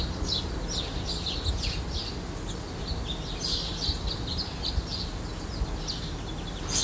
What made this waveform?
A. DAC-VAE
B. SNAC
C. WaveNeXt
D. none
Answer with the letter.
D